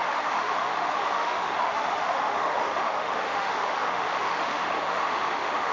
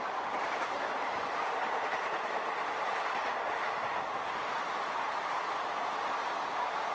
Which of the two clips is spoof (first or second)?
first